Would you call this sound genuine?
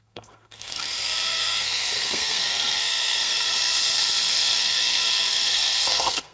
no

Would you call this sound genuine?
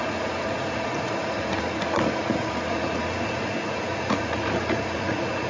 no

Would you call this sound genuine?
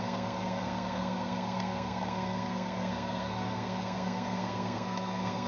no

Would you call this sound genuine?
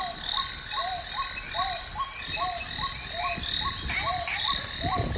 yes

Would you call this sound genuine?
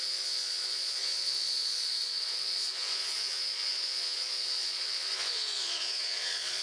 no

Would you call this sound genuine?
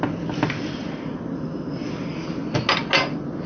yes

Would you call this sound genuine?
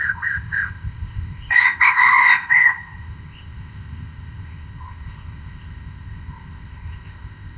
no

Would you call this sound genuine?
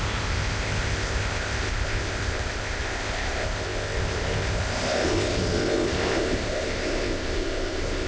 no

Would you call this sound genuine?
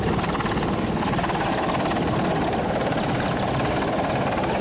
yes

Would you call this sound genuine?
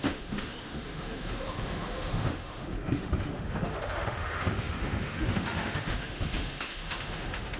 no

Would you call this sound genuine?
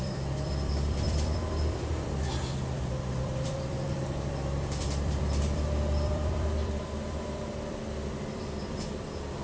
no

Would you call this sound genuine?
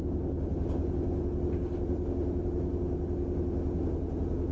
yes